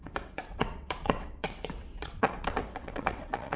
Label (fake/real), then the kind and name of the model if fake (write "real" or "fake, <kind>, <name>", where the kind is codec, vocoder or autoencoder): fake, vocoder, WaveNeXt